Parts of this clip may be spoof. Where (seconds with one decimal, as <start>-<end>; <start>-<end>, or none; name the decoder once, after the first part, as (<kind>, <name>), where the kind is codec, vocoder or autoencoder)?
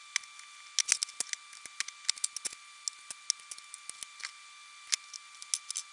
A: none